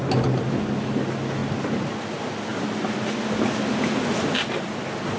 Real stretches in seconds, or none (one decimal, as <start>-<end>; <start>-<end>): 0.0-5.2